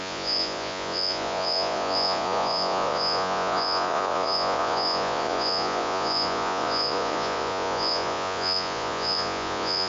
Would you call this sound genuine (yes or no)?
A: no